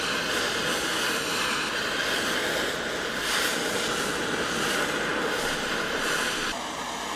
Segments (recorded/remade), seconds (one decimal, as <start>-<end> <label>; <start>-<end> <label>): 0.0-7.2 recorded